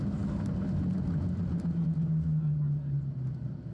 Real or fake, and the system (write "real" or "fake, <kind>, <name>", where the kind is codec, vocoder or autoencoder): real